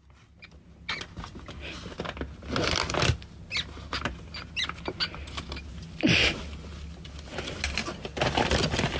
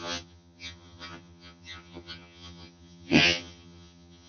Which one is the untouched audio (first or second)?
first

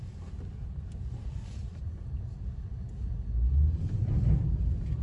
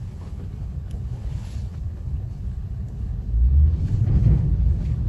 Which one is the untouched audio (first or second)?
first